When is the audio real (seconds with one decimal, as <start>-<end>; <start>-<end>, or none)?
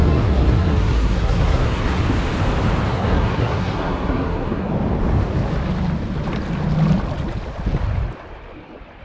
2.0-2.9; 4.7-9.0